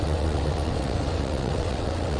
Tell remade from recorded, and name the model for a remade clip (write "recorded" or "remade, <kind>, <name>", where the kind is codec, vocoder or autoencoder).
remade, vocoder, WaveNeXt